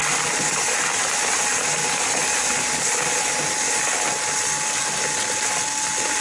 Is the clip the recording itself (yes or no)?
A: yes